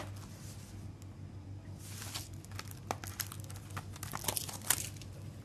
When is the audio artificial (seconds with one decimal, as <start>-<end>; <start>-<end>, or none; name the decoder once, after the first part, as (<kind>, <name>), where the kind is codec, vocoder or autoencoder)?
none